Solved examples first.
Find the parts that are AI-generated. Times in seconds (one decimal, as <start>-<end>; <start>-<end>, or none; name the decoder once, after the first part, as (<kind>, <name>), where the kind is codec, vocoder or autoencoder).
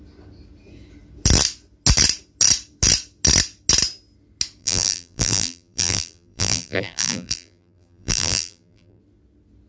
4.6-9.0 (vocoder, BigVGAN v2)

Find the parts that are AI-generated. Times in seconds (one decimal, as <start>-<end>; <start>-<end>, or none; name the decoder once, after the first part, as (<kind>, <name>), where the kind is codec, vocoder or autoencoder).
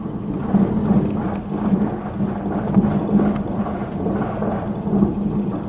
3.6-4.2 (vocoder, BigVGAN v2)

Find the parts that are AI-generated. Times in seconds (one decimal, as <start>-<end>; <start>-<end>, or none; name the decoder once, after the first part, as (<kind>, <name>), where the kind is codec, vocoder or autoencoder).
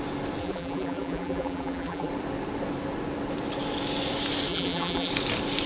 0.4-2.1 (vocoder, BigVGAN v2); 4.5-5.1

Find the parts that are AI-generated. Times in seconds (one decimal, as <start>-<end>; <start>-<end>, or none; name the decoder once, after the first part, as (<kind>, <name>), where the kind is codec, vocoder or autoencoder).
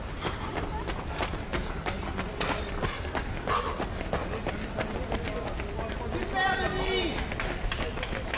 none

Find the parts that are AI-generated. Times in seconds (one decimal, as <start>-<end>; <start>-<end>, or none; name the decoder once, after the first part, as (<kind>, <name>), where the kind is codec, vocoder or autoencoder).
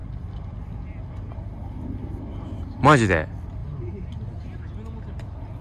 none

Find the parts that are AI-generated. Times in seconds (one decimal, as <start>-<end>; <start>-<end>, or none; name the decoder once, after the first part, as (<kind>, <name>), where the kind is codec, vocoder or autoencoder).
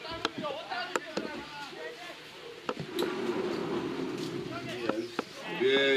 none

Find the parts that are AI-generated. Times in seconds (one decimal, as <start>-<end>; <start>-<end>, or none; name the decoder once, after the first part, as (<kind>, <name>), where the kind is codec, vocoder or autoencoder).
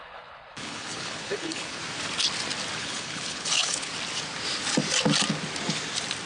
0.0-1.8 (codec, HILCodec); 2.8-3.9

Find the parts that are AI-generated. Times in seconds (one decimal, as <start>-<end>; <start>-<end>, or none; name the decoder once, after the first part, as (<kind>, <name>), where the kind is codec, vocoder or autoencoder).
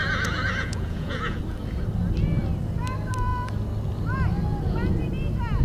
0.0-1.4 (vocoder, Vocos)